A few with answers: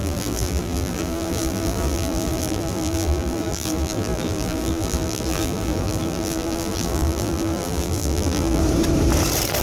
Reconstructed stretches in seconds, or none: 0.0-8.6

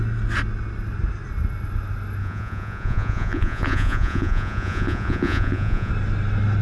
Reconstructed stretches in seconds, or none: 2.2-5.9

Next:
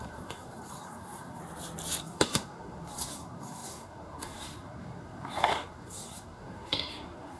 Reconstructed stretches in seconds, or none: 0.0-1.4; 2.0-7.4